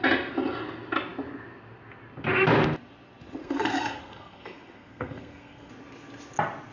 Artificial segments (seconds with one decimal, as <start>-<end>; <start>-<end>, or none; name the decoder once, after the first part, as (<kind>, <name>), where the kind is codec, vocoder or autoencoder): 3.4-5.7 (codec, SNAC)